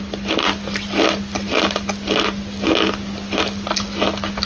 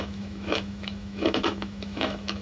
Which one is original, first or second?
first